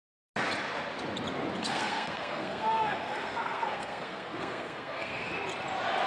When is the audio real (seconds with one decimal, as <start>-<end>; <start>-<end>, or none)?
0.0-1.6; 5.3-6.1